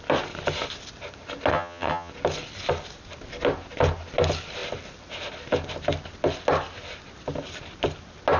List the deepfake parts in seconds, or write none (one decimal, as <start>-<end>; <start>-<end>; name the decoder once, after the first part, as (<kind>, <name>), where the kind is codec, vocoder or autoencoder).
1.5-2.1 (vocoder, HiFi-GAN)